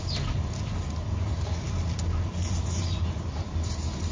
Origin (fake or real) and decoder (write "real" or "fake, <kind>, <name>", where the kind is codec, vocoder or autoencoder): real